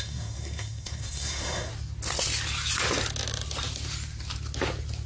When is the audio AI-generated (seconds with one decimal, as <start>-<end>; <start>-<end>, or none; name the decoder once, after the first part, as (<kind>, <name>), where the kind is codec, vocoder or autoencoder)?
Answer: 0.0-1.7 (codec, SNAC)